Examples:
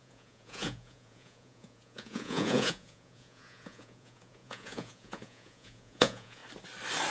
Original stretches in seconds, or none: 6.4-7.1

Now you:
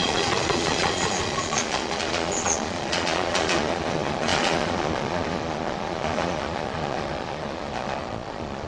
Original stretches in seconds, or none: none

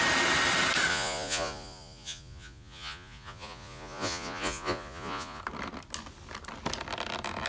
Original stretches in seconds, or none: 0.0-0.9; 5.4-7.5

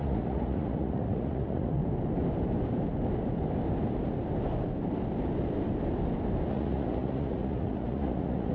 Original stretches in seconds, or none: 1.8-6.5